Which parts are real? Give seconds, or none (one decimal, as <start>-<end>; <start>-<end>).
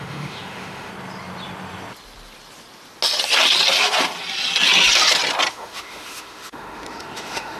0.9-5.5